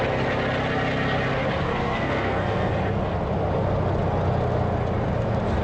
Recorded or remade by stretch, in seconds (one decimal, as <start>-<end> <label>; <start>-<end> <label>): 0.0-1.7 recorded; 1.7-2.7 remade; 2.7-5.6 recorded